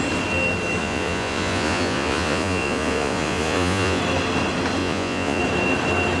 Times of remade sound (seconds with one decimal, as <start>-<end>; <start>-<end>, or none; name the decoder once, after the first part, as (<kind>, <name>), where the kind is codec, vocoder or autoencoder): 0.8-4.0 (vocoder, Vocos); 4.8-5.4